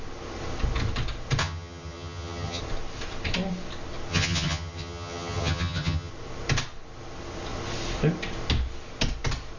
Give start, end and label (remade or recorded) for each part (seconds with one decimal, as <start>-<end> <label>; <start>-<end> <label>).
0.0-1.4 recorded; 1.4-2.6 remade; 2.6-4.1 recorded; 4.1-6.1 remade; 6.1-9.6 recorded

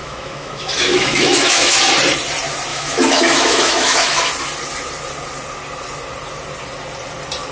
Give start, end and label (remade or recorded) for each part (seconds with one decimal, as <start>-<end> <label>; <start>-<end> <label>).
0.0-1.8 remade; 1.8-2.7 recorded; 2.7-4.3 remade; 4.3-7.5 recorded

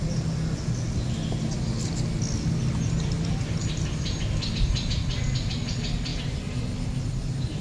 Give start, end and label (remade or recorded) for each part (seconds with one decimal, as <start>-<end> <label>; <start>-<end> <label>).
0.0-7.6 recorded